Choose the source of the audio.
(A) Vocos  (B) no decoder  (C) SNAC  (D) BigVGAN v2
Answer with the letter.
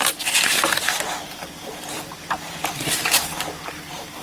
B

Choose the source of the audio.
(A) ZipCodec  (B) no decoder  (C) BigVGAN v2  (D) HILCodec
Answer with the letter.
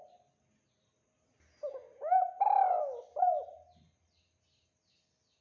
B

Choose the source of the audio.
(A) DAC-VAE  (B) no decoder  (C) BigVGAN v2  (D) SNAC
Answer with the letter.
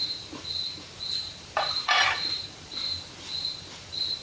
C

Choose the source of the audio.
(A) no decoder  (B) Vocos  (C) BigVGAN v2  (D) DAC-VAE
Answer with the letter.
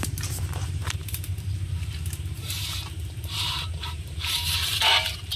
C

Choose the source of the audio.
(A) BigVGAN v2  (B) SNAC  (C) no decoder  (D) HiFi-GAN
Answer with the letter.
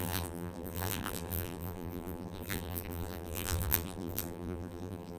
A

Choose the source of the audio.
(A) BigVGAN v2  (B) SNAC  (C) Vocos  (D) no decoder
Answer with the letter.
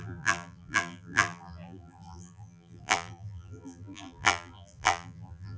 A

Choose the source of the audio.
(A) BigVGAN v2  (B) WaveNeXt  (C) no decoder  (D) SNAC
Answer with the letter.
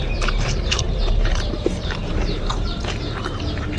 A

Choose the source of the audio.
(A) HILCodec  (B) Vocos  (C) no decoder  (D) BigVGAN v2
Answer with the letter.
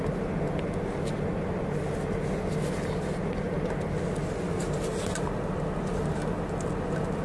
C